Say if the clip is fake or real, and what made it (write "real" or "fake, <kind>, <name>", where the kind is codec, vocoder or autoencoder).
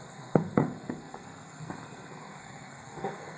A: fake, codec, SNAC